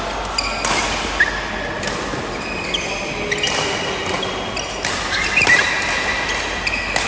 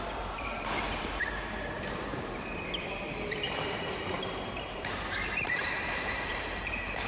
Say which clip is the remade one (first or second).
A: second